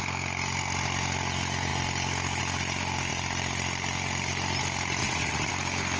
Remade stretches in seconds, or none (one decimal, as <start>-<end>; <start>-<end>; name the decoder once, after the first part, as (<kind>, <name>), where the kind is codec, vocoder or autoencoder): 5.0-5.5 (vocoder, WaveNeXt)